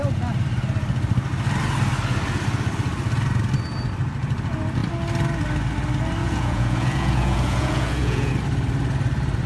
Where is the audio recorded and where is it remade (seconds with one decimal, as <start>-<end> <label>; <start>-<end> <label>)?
0.0-6.2 recorded; 6.2-8.3 remade; 8.3-9.5 recorded